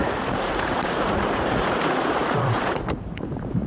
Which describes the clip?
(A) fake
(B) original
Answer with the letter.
A